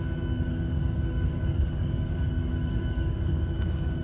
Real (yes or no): no